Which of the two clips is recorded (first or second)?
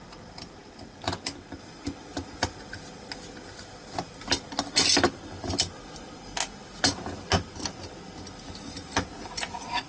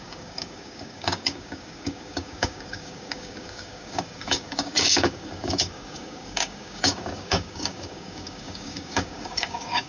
first